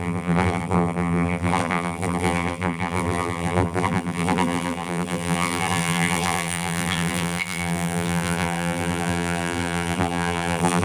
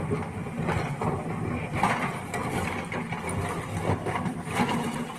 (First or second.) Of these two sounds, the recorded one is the second